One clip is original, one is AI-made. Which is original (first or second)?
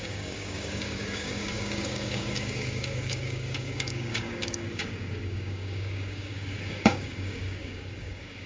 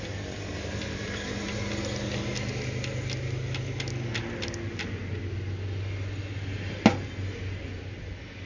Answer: second